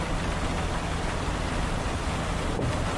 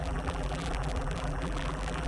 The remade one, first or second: second